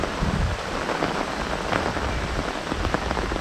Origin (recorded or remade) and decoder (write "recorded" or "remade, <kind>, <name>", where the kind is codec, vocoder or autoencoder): recorded